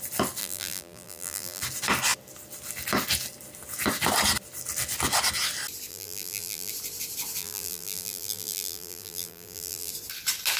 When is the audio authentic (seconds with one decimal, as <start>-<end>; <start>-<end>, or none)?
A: 0.0-0.4; 1.6-5.9; 6.7-7.4; 9.9-10.6